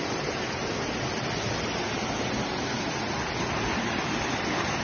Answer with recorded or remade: recorded